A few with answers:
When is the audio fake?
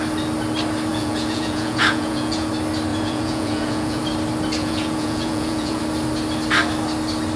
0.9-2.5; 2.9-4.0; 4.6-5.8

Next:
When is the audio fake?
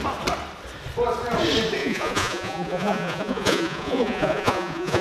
1.8-5.0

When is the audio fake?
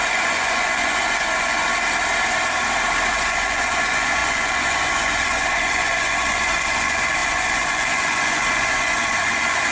0.0-1.7; 3.1-9.7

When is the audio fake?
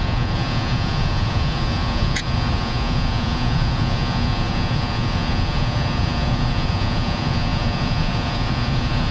0.0-9.1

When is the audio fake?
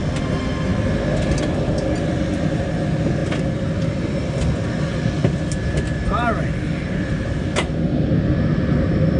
none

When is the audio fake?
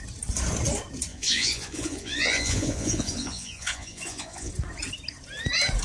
1.1-4.5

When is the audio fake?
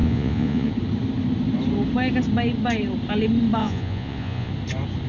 0.0-0.7; 3.6-4.5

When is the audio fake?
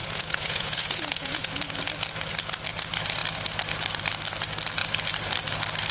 0.0-1.6